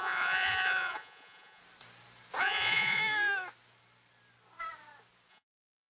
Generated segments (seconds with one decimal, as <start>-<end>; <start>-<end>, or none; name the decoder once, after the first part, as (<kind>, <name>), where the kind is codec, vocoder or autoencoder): 0.0-1.6 (vocoder, Vocos); 2.4-3.0; 5.3-5.9